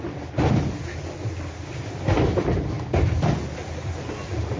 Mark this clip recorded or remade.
recorded